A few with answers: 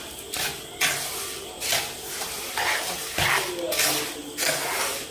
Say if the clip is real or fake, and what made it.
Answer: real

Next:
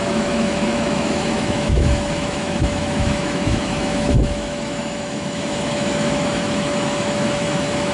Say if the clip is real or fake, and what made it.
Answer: fake, autoencoder, DAC-VAE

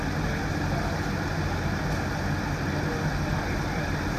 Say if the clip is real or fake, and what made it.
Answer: real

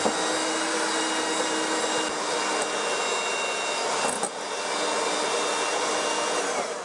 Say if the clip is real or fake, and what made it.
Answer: real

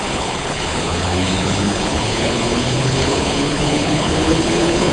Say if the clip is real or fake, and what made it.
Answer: fake, codec, HILCodec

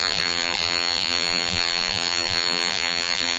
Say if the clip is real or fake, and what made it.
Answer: fake, vocoder, BigVGAN v2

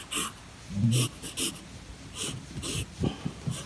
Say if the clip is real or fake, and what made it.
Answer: real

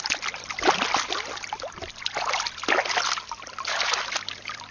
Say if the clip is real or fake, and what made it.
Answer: real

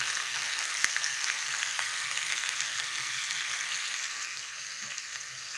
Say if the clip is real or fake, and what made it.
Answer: fake, codec, SNAC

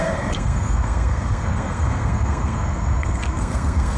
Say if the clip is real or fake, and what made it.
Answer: fake, codec, SNAC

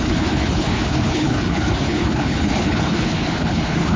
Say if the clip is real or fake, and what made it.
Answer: fake, codec, HILCodec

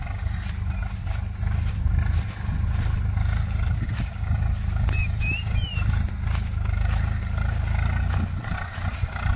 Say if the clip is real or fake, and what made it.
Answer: real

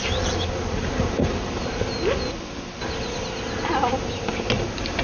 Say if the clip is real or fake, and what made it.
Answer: real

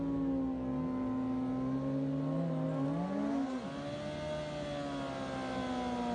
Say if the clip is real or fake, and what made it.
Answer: real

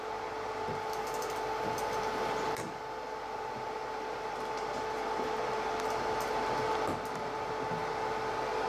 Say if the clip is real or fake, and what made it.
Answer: real